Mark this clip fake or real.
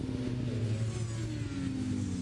real